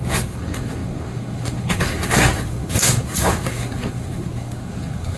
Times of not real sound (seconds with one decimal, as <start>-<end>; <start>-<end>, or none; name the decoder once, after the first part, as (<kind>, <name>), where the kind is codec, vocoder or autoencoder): 0.0-5.2 (codec, SNAC)